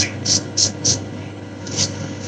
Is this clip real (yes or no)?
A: no